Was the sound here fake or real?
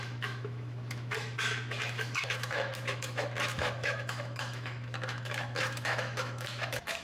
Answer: fake